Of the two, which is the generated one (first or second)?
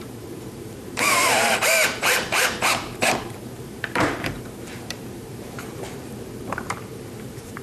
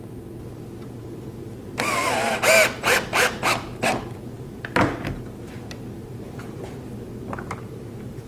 first